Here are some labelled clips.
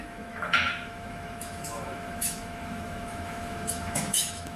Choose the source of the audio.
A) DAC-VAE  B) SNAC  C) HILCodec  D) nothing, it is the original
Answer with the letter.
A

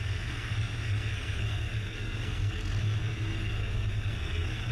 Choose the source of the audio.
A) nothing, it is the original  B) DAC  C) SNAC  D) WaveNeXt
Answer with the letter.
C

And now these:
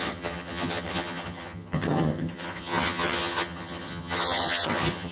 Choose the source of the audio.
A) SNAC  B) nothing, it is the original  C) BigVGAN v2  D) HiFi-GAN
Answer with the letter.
D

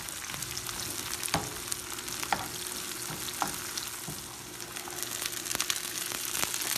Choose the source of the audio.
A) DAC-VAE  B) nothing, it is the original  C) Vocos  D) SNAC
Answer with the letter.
B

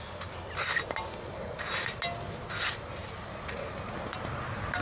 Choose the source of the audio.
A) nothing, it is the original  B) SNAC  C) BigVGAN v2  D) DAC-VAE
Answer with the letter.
A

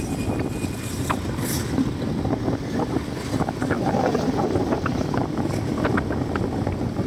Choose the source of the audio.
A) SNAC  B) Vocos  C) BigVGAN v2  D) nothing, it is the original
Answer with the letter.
D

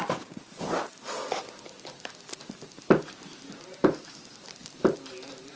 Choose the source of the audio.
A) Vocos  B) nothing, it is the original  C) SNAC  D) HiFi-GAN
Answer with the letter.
B